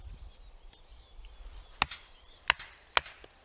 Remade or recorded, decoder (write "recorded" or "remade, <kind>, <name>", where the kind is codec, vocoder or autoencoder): recorded